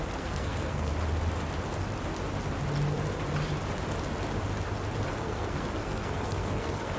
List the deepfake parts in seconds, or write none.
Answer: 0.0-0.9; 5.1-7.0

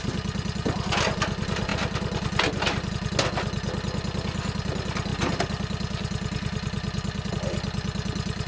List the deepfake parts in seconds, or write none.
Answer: none

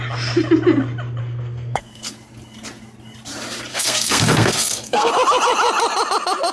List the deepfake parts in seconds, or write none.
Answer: 1.2-2.1; 3.7-5.1

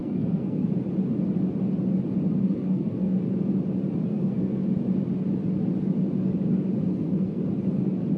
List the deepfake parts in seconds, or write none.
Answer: 0.0-0.7; 2.4-3.2; 4.1-4.6; 6.9-7.5

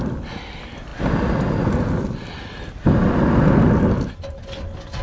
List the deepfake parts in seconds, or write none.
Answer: none

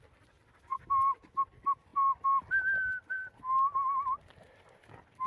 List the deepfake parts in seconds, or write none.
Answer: none

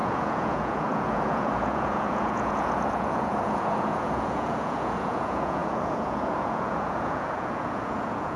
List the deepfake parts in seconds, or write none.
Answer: 0.0-8.4

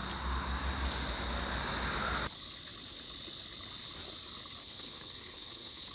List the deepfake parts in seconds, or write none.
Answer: 4.6-5.9